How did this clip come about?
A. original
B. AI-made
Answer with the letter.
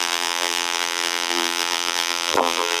B